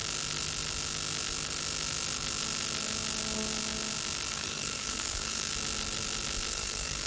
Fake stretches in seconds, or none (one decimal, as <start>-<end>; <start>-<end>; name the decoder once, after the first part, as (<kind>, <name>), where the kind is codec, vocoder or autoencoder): 4.3-5.5 (codec, SNAC); 6.5-7.1